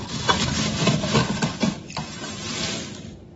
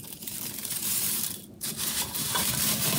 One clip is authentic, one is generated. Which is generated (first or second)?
second